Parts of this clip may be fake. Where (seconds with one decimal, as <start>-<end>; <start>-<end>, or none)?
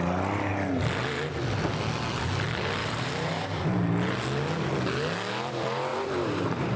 2.8-3.7; 5.9-6.8